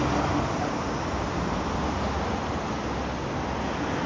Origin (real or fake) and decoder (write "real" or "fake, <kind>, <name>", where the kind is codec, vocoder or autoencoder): real